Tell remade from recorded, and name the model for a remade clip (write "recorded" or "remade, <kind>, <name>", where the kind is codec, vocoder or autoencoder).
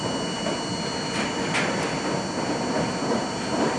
recorded